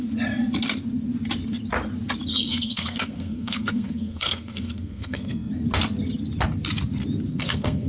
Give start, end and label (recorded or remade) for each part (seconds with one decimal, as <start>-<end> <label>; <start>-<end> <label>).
0.0-2.3 recorded; 2.3-5.5 remade; 5.5-7.3 recorded; 7.3-7.9 remade